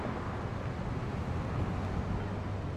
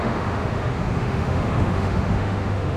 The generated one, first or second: second